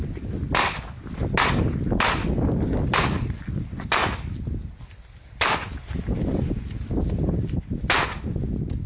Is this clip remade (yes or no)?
no